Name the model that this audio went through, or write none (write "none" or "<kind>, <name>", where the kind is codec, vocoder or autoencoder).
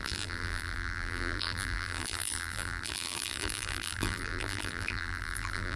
vocoder, BigVGAN v2